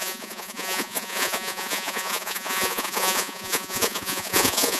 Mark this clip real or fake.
fake